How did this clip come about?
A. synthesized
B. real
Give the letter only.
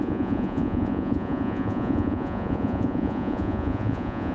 A